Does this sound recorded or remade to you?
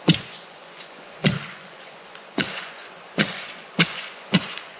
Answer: remade